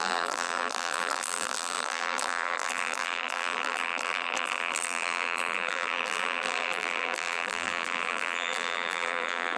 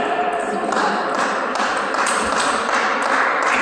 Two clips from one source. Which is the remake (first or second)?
first